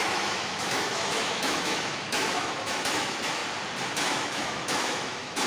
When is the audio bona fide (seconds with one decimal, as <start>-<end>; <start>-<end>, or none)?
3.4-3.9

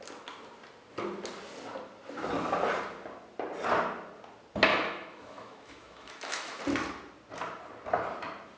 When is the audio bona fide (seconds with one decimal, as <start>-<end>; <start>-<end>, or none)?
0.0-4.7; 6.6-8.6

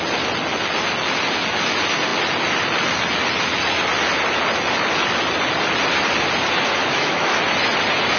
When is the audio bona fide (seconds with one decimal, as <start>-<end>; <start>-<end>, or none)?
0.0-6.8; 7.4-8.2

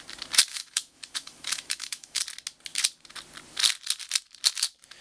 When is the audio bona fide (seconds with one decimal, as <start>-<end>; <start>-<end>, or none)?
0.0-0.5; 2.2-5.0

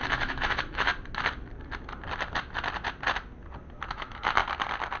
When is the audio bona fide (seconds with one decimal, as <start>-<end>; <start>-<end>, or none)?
0.9-3.9; 4.4-5.0

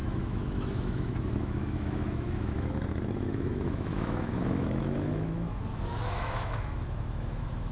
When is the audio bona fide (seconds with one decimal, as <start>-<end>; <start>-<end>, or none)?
none